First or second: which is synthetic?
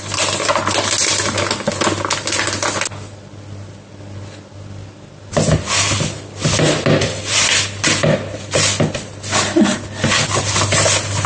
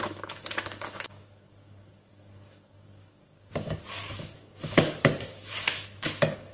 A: second